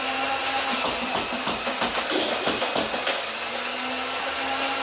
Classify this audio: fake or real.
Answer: real